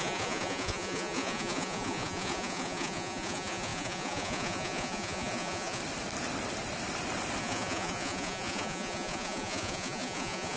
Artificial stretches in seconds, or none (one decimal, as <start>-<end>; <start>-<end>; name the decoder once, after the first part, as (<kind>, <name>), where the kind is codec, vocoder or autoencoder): 0.0-5.8 (vocoder, Vocos); 7.4-10.6